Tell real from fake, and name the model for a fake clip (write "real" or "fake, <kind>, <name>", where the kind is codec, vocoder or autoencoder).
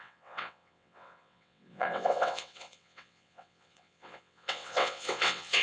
fake, vocoder, WaveNeXt